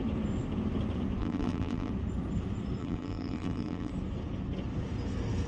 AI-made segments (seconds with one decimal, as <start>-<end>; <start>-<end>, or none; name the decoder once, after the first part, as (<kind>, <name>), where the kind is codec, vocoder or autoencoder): 1.2-1.9 (vocoder, BigVGAN v2); 2.8-3.9